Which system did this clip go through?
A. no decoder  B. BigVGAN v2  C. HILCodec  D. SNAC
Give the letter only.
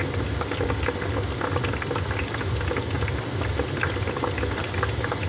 A